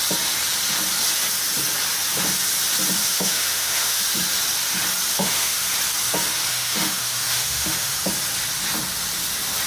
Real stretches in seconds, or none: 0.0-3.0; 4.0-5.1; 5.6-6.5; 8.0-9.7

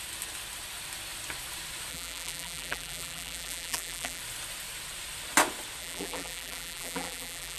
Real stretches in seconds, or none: 0.0-1.9; 4.2-5.8

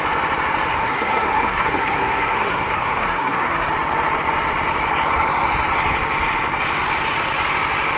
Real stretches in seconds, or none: 0.0-0.7; 3.7-8.0

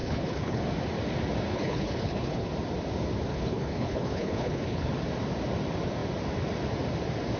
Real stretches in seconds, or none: 0.6-1.5; 2.5-3.3; 4.9-7.4

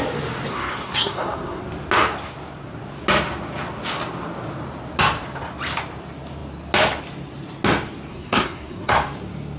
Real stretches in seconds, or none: 0.0-0.5; 1.6-8.1; 8.9-9.6